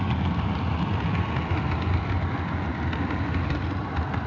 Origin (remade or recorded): recorded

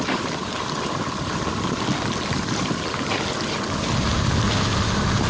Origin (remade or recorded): recorded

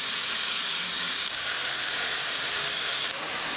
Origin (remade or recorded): remade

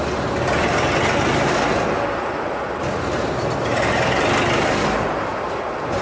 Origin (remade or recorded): recorded